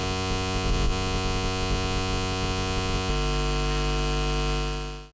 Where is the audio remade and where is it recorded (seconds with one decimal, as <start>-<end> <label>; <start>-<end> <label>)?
0.0-3.1 remade; 3.1-5.1 recorded